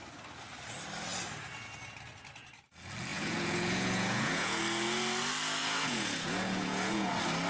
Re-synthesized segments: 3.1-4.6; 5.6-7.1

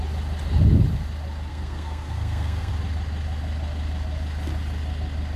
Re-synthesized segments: 1.5-2.7

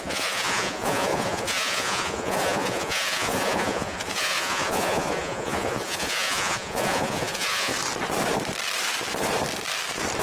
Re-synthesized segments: 0.0-7.7